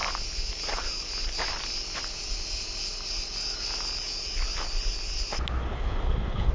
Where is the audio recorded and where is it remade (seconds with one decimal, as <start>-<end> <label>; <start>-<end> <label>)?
0.0-5.6 recorded; 5.6-6.5 remade